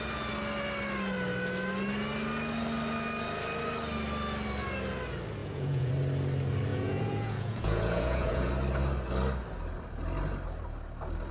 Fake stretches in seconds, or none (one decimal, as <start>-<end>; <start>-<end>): 5.4-5.9; 6.7-8.5